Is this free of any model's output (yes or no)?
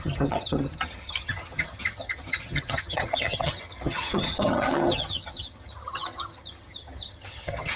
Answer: no